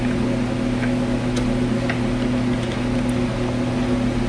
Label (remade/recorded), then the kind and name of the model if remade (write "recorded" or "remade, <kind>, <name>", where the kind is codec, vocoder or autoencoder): recorded